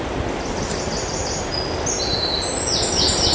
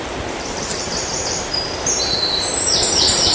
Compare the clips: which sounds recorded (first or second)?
first